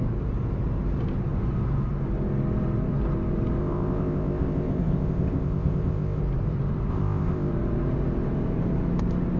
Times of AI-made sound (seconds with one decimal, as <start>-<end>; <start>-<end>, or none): 3.6-6.2; 6.9-7.5

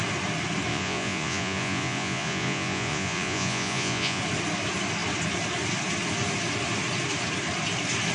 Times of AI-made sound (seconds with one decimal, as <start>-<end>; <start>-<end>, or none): 0.7-4.2

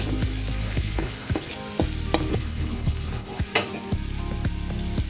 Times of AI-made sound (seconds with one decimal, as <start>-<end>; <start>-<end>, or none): 0.6-1.5; 2.3-3.4

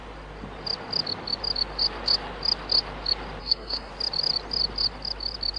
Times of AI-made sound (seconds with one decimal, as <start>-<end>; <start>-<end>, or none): 3.4-3.9

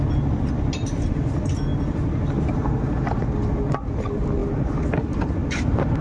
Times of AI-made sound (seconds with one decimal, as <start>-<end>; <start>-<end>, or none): none

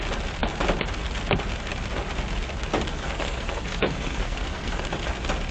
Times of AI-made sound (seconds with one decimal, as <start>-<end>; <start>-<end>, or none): 2.9-4.8